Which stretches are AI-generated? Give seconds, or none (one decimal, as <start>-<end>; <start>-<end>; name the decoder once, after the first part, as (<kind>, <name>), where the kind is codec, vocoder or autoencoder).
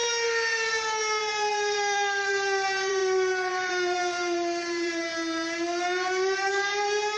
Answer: 1.2-7.2 (vocoder, BigVGAN v2)